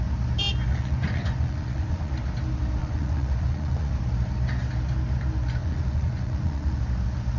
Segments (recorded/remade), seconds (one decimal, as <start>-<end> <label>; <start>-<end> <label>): 0.0-0.7 recorded; 0.7-2.1 remade; 2.1-2.8 recorded; 2.8-3.9 remade; 3.9-5.6 recorded; 5.6-6.8 remade; 6.8-7.4 recorded